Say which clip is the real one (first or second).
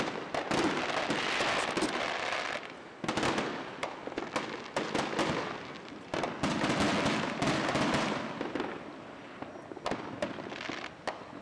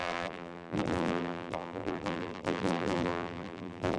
first